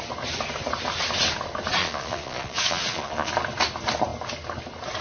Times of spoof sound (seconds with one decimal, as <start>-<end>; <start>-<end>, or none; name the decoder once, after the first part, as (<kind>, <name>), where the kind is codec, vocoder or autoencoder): 1.8-3.3 (vocoder, Vocos)